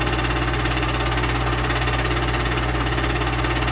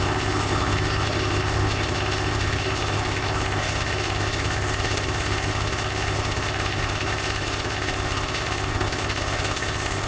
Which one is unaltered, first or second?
first